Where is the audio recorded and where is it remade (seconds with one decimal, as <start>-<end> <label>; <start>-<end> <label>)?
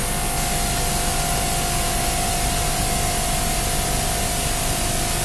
0.0-5.2 recorded